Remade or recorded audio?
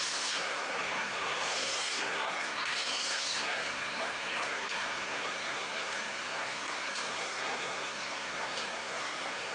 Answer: remade